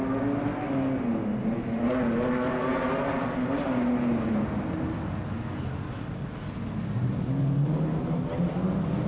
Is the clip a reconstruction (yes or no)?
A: no